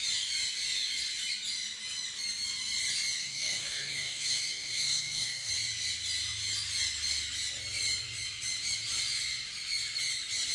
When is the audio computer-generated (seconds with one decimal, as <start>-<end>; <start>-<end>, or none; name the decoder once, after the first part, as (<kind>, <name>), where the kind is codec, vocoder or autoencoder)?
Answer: 3.2-5.5 (codec, DAC)